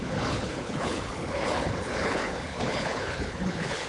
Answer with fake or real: fake